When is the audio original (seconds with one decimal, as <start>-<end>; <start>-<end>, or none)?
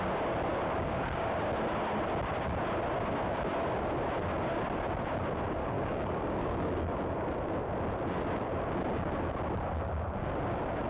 0.0-0.5; 1.3-5.6; 6.9-10.9